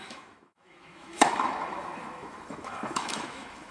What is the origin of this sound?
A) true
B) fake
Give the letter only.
B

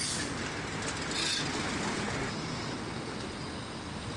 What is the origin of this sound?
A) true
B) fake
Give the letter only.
A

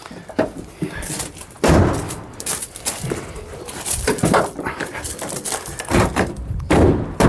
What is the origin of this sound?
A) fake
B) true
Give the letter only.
A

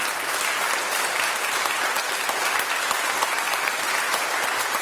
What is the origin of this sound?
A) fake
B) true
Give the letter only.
B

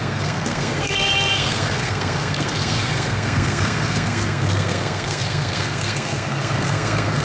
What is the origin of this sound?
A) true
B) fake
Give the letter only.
B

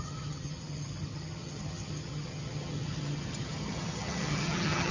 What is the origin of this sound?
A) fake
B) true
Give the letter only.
A